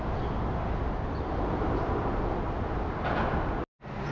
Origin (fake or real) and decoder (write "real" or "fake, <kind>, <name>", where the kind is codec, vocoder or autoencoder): real